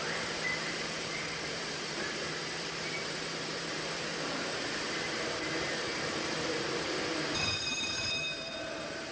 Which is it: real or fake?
fake